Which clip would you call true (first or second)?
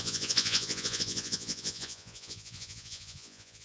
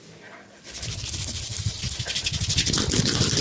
second